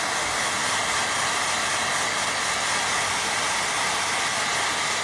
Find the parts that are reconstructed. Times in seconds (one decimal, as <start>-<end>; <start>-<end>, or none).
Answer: none